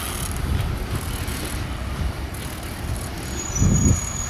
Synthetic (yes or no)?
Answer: no